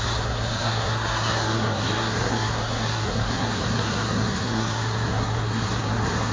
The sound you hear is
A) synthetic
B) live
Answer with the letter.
A